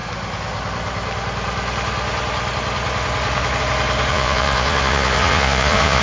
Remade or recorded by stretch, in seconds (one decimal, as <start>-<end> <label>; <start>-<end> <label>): 0.0-4.1 recorded; 4.1-6.0 remade